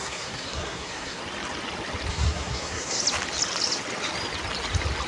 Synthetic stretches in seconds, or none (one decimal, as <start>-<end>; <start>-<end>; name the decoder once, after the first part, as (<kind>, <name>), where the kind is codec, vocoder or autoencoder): 0.0-1.2 (codec, SNAC); 2.1-3.0